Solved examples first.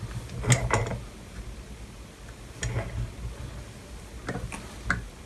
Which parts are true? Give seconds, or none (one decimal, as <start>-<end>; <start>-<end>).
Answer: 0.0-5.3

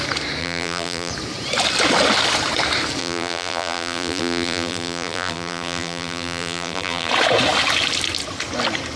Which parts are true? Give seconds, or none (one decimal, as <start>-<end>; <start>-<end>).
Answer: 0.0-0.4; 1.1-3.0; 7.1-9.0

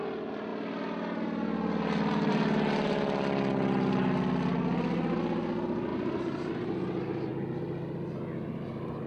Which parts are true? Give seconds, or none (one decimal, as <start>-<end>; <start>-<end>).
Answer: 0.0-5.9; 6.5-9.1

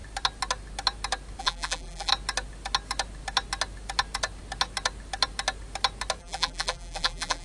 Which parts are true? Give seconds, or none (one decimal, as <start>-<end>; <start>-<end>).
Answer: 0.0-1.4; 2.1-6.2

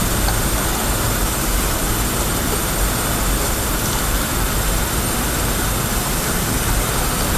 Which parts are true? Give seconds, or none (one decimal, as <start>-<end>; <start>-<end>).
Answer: 0.0-1.2; 1.8-5.9; 6.9-7.4

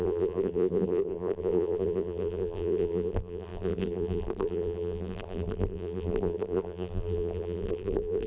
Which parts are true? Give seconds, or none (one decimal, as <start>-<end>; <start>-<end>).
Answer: none

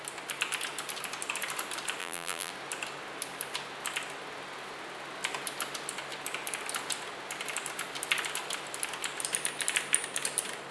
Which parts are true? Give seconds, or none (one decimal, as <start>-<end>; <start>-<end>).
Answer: 0.0-2.0; 2.5-10.7

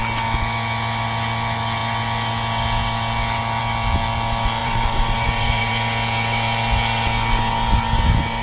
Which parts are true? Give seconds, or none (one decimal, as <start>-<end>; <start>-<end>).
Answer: 0.0-4.6; 5.7-8.4